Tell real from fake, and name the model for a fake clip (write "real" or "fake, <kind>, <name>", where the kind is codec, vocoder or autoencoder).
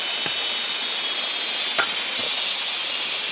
real